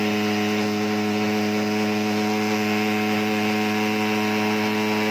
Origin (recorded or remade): recorded